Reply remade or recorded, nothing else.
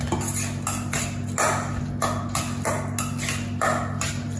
recorded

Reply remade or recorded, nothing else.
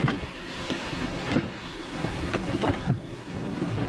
remade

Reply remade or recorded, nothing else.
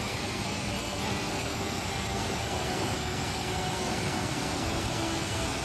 remade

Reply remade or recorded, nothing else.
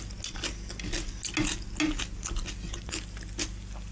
recorded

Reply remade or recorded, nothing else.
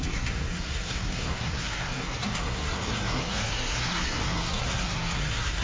remade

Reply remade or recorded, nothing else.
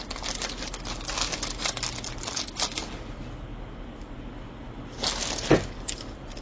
recorded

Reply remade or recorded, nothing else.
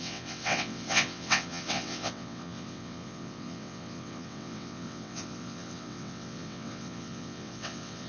remade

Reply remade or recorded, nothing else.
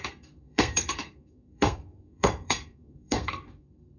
remade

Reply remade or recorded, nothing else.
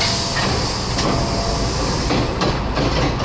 recorded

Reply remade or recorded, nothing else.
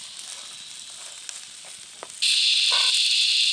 recorded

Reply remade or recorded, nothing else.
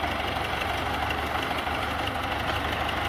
recorded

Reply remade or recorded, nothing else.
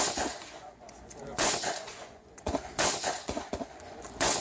remade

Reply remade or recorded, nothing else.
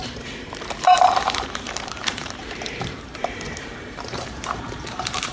remade